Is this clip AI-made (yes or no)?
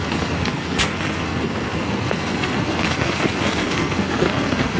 yes